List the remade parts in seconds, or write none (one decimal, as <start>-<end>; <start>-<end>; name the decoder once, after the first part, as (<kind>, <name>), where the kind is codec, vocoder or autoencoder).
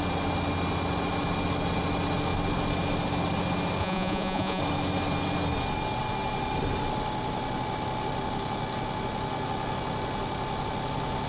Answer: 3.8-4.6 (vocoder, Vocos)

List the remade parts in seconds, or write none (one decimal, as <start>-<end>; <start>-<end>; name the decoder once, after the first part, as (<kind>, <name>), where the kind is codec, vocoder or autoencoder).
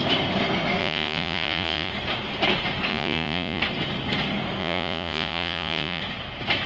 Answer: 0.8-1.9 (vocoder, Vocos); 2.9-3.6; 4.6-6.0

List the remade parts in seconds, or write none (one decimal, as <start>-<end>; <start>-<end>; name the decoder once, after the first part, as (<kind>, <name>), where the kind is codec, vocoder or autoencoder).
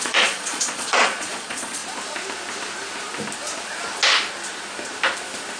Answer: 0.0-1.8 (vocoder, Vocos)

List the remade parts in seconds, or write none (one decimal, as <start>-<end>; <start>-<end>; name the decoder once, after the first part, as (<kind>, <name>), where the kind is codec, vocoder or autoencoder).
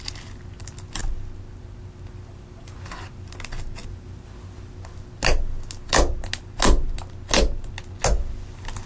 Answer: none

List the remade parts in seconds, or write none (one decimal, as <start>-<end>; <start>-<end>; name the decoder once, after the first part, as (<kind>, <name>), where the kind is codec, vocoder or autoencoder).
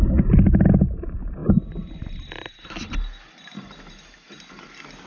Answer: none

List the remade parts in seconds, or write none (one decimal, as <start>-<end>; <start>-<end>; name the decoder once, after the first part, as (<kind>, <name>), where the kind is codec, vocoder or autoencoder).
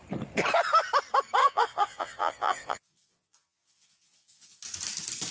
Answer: 1.4-4.6 (vocoder, Vocos)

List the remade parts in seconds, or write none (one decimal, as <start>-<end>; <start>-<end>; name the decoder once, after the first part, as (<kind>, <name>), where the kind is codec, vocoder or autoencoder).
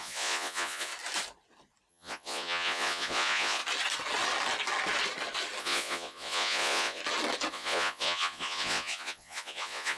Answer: 0.0-0.9 (vocoder, Vocos); 1.9-3.6; 5.6-7.0; 7.5-10.0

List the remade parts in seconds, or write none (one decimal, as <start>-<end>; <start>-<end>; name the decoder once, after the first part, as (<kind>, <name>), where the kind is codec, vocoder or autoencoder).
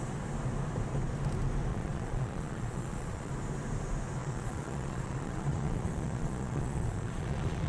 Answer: 1.7-3.3 (vocoder, Vocos); 4.2-7.7